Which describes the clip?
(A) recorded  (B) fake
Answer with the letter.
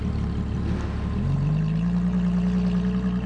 A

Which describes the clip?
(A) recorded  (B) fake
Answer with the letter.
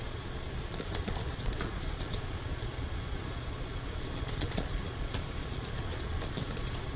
B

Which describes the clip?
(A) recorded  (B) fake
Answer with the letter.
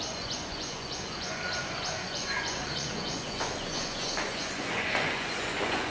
B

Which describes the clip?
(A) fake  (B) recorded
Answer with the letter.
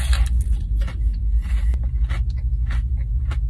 B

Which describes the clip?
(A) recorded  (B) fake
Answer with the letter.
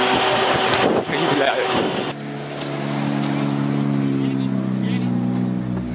A